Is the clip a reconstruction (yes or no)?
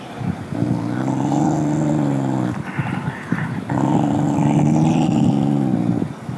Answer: no